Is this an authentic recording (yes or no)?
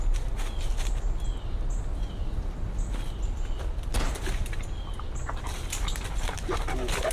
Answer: yes